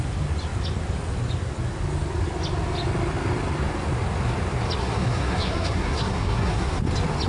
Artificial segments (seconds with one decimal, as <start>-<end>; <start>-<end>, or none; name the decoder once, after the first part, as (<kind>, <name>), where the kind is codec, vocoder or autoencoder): 4.8-6.8 (codec, SNAC)